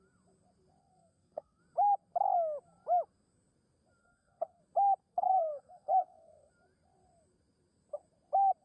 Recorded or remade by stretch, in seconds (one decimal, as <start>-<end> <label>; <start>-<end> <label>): 0.0-0.8 recorded; 0.8-1.6 remade; 1.6-4.0 recorded; 4.0-4.6 remade; 4.6-5.1 recorded; 5.1-6.5 remade; 6.5-8.6 recorded